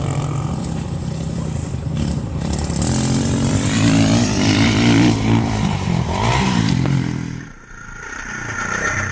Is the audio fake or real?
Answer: fake